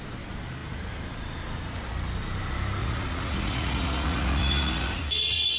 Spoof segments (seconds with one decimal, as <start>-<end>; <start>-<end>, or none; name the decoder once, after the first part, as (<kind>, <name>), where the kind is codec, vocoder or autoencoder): 2.8-5.6 (vocoder, Vocos)